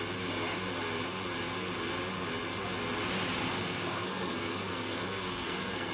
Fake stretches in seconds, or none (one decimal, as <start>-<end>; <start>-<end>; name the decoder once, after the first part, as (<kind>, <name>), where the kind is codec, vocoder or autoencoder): 3.6-5.9 (codec, SNAC)